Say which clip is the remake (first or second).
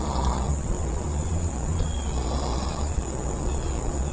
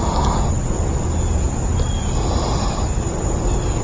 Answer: first